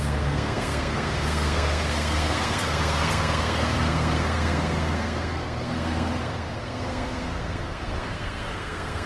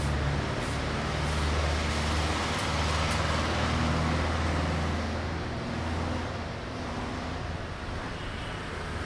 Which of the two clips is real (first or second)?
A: second